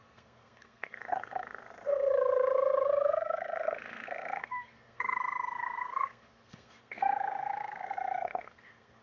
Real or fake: fake